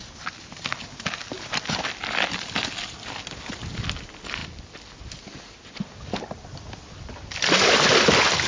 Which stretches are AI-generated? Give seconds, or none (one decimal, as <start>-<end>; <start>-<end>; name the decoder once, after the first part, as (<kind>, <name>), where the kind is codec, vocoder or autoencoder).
none